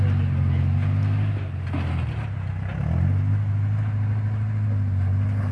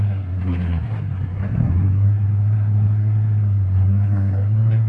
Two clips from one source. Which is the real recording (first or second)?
first